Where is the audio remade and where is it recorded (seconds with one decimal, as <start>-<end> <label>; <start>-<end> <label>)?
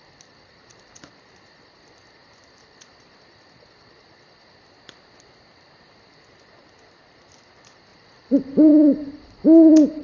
0.0-7.9 recorded; 7.9-8.7 remade; 8.7-10.0 recorded